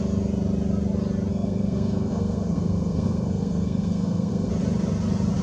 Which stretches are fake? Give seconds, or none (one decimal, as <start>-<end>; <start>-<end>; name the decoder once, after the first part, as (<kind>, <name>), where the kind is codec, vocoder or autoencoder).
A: 1.3-4.5 (codec, SNAC)